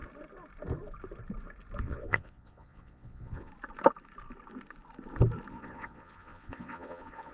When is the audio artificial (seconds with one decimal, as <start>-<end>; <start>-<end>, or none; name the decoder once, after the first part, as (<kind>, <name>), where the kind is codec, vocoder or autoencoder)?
1.8-3.5 (vocoder, Vocos); 5.5-7.3